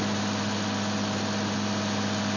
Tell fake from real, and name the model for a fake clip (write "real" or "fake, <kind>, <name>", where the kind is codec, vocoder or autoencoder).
real